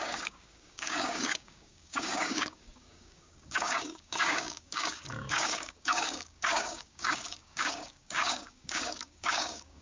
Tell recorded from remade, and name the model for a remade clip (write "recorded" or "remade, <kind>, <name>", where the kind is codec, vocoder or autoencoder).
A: remade, codec, DAC